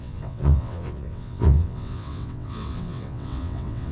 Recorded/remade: remade